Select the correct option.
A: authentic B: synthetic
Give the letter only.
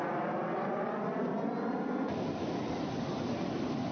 A